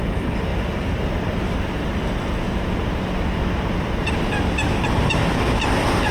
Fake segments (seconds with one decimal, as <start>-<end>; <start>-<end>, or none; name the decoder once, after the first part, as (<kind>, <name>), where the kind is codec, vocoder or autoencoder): 0.5-2.0 (vocoder, BigVGAN v2)